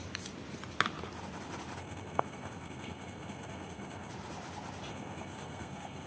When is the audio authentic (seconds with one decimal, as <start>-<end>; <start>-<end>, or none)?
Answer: 0.0-1.8; 4.1-4.9